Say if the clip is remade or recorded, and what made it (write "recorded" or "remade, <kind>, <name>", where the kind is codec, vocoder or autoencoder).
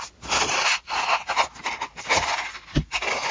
recorded